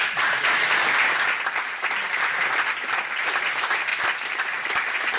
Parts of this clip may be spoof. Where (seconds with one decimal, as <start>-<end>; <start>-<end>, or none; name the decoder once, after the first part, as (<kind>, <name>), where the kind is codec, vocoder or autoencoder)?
none